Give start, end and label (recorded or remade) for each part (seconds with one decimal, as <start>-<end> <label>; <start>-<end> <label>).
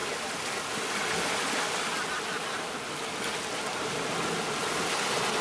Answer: 0.0-0.7 remade; 0.7-5.4 recorded